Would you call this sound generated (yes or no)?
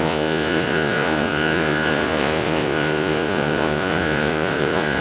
yes